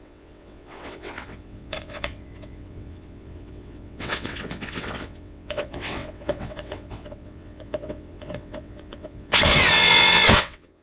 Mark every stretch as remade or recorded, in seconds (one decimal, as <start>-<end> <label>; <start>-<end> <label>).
0.0-10.8 remade